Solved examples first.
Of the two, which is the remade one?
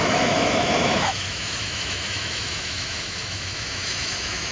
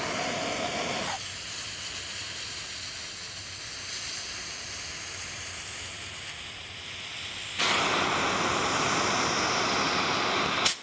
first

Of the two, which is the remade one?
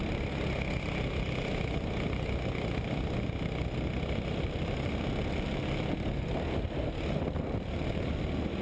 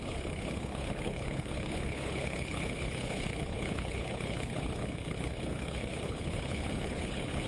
second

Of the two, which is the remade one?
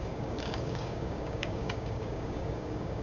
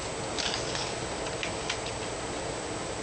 first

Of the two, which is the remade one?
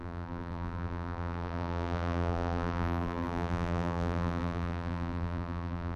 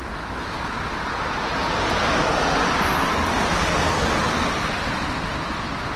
first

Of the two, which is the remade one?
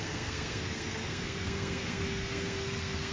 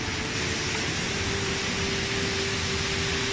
first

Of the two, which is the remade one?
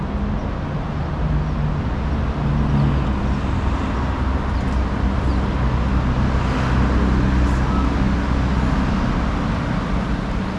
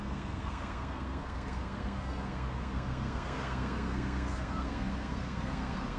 second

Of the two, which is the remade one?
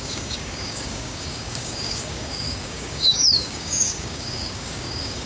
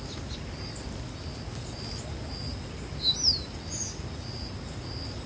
first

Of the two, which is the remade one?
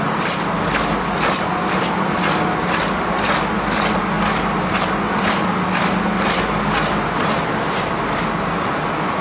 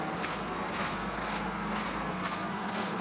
second